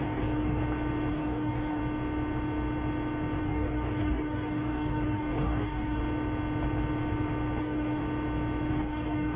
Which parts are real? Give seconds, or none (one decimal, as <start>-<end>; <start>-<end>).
0.6-1.1; 1.8-3.4; 6.0-7.6; 8.0-8.7